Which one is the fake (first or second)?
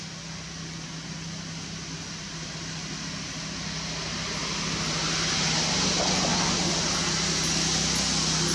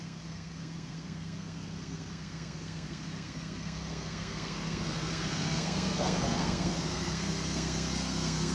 second